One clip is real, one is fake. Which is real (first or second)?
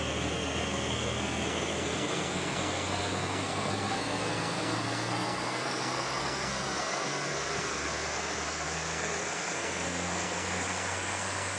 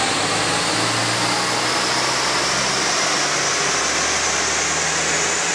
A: second